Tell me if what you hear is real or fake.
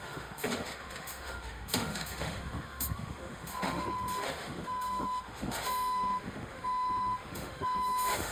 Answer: fake